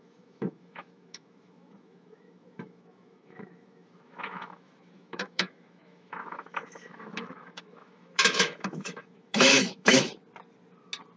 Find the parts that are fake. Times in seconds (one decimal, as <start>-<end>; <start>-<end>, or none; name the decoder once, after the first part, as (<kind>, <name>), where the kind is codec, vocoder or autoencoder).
0.0-10.1 (autoencoder, DAC-VAE)